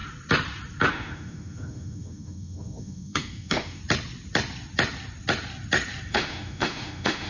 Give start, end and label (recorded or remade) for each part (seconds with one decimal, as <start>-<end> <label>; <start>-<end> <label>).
0.0-0.9 recorded; 0.9-3.8 remade; 3.8-6.1 recorded; 6.1-7.3 remade